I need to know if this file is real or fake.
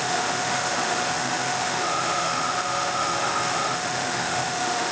fake